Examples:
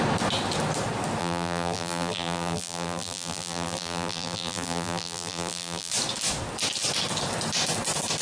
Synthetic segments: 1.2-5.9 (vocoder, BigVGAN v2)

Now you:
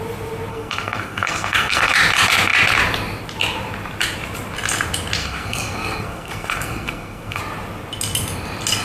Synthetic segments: 0.5-1.9 (codec, SNAC); 5.2-7.4

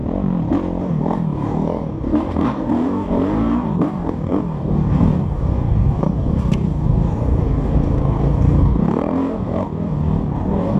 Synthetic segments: 0.8-10.8 (codec, DAC)

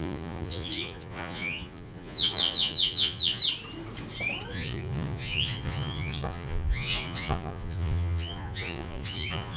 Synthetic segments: 0.0-3.4 (vocoder, Vocos); 4.5-9.6